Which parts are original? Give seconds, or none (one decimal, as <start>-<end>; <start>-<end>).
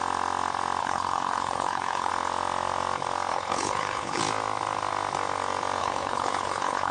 0.0-0.8; 2.1-3.3; 4.2-5.8